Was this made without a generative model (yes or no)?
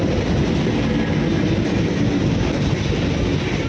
yes